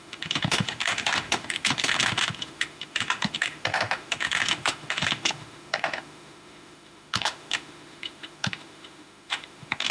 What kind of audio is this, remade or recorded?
remade